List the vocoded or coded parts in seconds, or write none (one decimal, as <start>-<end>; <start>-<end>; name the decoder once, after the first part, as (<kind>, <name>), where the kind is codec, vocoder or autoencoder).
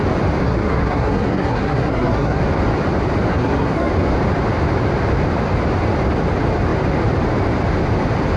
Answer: 0.4-2.4 (codec, SNAC); 3.3-3.9